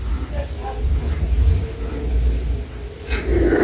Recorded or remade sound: recorded